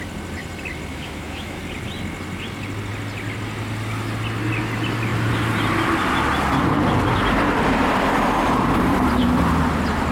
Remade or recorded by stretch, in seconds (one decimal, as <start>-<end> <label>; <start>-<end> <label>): 0.0-0.9 recorded; 0.9-1.6 remade; 1.6-10.1 recorded